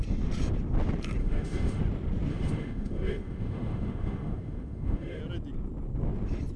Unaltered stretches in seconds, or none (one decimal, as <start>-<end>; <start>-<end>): 0.0-1.2; 1.8-2.3; 5.2-6.6